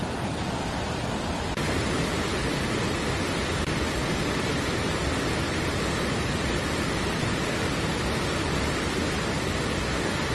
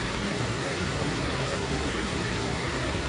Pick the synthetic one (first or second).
second